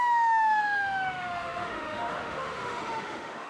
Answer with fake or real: fake